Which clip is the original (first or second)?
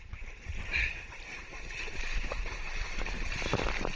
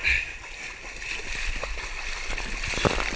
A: second